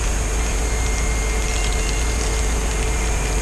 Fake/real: real